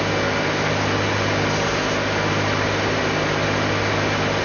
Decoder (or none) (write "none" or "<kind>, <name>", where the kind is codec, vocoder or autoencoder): none